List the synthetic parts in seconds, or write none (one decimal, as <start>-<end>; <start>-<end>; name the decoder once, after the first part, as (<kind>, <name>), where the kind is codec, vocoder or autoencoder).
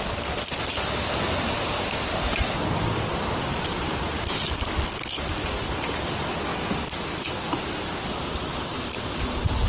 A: 3.5-6.1 (vocoder, BigVGAN v2); 6.5-7.5